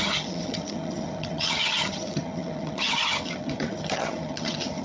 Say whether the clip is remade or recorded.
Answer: remade